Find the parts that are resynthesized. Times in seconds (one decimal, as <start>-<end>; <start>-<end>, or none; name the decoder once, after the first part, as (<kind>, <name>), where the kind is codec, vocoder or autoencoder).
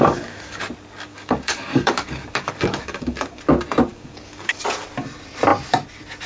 0.0-0.6 (codec, DAC); 1.1-3.4; 3.9-4.6